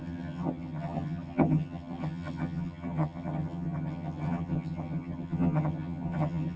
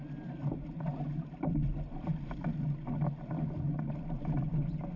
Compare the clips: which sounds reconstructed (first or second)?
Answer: first